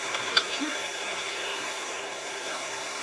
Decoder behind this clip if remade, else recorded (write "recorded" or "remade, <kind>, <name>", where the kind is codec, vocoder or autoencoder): remade, codec, SNAC